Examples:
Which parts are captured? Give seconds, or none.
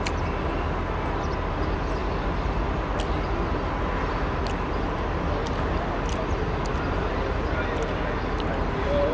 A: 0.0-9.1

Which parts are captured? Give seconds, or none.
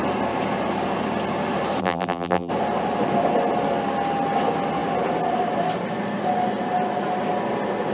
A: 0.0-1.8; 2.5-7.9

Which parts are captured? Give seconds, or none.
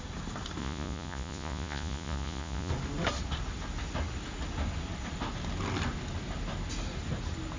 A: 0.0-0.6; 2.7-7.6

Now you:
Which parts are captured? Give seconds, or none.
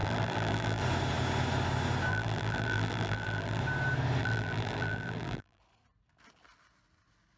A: 0.8-2.1; 3.6-4.2; 5.6-7.4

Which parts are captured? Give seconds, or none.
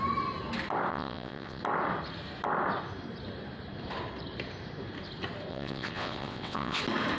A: 0.0-0.9; 1.6-5.5; 6.8-7.2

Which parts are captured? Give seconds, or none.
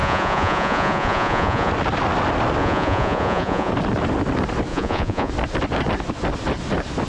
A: 1.7-2.6; 3.7-4.7; 5.3-7.1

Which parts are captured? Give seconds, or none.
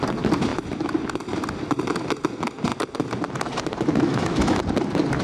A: 0.0-4.1; 4.6-5.2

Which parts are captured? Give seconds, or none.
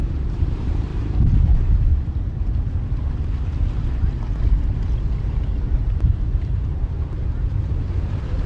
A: 1.9-5.8